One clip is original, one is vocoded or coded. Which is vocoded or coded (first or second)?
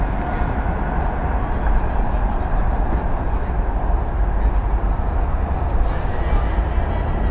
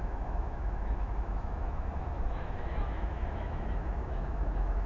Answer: second